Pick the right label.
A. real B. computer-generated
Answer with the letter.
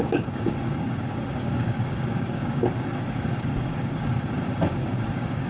B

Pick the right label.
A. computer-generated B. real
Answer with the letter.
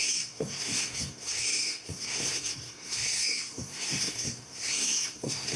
A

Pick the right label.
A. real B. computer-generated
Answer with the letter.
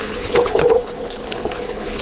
B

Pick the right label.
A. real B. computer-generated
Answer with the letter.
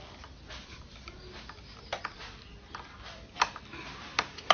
A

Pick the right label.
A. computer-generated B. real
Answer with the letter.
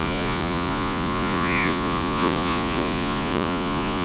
A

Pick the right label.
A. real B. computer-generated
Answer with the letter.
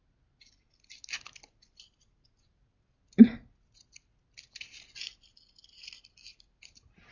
A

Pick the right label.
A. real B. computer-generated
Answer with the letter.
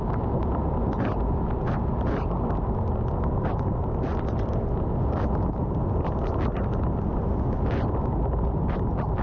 A